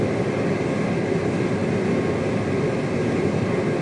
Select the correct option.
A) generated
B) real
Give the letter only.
B